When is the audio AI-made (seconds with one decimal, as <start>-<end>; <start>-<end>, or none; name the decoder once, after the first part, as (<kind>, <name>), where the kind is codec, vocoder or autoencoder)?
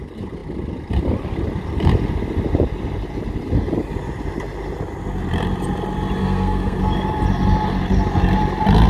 6.2-6.8 (codec, SNAC)